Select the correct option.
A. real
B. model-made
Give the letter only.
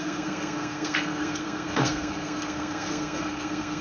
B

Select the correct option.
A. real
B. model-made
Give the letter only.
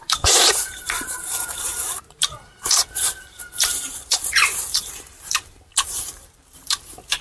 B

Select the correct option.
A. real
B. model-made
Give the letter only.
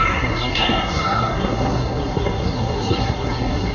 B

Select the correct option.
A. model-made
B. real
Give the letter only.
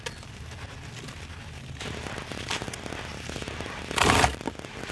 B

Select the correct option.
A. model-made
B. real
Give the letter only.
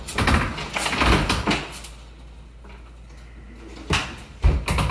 B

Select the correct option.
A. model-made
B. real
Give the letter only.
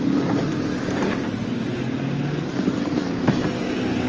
B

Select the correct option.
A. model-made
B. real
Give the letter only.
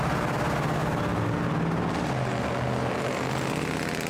B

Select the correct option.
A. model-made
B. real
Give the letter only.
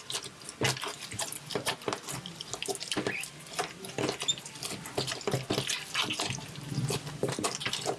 B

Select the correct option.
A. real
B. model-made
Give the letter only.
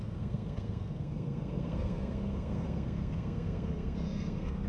B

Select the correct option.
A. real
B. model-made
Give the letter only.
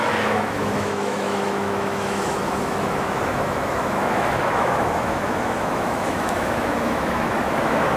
B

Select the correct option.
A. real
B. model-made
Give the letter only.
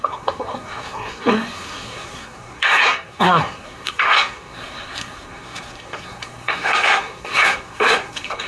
B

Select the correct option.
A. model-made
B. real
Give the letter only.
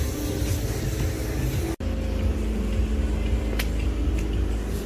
B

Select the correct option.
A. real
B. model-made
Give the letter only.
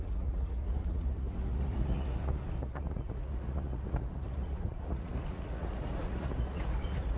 B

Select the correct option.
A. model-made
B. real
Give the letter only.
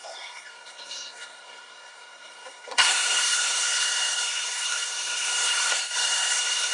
A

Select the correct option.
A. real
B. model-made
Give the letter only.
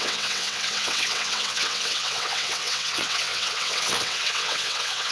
B